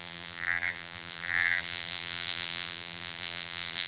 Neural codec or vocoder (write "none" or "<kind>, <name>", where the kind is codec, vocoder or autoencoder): vocoder, BigVGAN v2